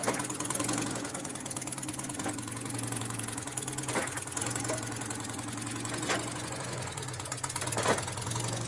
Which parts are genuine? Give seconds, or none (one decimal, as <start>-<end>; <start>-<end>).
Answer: none